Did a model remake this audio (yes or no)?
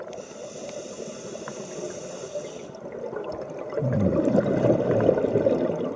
no